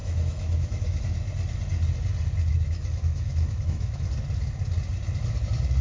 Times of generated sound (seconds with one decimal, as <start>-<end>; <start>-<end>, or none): 0.0-1.0; 2.5-4.0